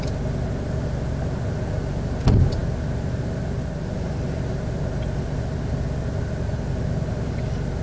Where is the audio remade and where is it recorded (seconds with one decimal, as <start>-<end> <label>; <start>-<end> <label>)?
0.0-7.8 recorded